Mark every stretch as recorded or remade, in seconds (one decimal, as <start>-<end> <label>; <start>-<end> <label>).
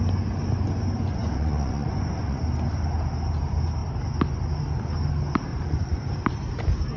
0.0-1.2 recorded; 1.2-2.4 remade; 2.4-5.5 recorded; 5.5-6.1 remade; 6.1-7.0 recorded